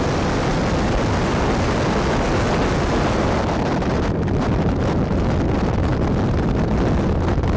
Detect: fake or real real